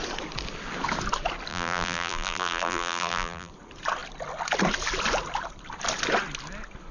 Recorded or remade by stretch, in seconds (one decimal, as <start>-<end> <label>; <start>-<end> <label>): 0.0-1.5 recorded; 1.5-3.5 remade; 3.5-6.9 recorded